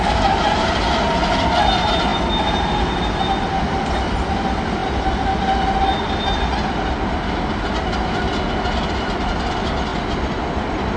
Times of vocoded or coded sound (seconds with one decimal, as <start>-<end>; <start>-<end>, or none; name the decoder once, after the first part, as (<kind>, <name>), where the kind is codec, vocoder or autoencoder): none